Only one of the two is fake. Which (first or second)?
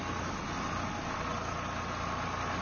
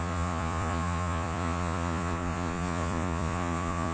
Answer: second